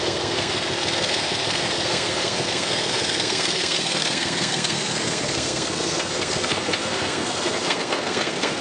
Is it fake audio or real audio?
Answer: fake